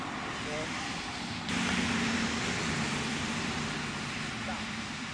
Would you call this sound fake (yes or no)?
no